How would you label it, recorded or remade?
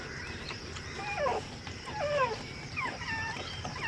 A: remade